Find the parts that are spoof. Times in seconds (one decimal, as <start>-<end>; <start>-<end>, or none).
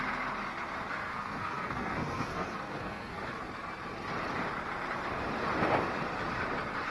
0.9-3.3